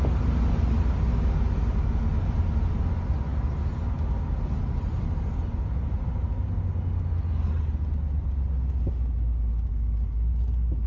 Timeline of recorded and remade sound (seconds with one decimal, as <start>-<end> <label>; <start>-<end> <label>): 0.0-10.9 recorded